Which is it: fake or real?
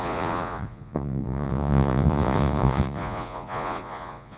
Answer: fake